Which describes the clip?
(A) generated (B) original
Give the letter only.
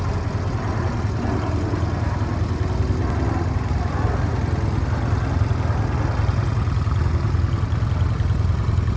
B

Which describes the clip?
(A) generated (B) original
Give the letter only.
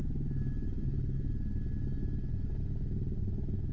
B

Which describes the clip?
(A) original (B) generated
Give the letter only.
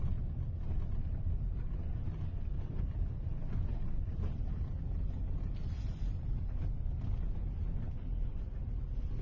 A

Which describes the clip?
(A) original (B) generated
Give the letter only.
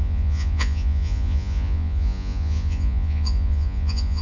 B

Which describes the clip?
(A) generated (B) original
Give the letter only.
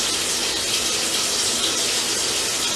B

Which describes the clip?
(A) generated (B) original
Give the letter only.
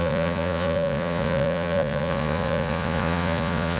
A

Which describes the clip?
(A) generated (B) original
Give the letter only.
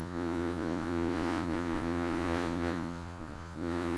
A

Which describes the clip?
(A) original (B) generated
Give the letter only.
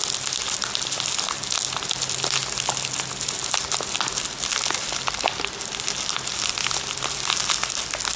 A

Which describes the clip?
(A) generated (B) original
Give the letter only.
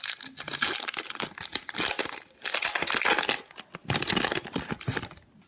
B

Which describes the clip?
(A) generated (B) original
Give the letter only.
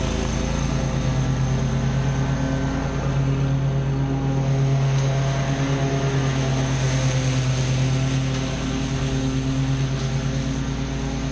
B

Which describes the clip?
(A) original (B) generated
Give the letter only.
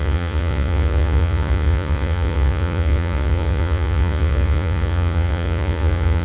B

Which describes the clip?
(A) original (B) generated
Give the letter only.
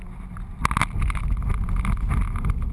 A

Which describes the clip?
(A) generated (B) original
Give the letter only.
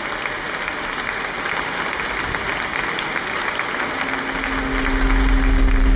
B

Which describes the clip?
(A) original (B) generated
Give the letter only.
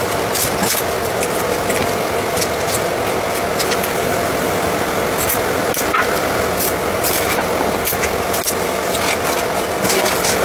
A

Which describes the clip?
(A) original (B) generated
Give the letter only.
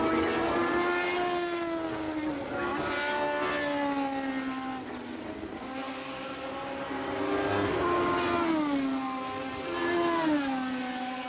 A